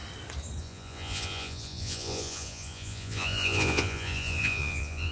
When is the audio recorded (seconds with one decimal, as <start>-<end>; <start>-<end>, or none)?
0.0-0.6